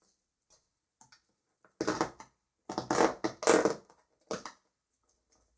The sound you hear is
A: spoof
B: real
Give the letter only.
B